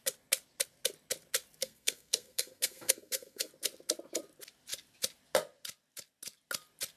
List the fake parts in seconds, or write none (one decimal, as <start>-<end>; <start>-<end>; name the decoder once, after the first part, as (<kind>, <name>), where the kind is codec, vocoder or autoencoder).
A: 1.6-3.5 (codec, SNAC)